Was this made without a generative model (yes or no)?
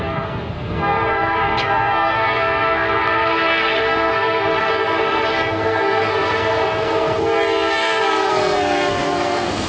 no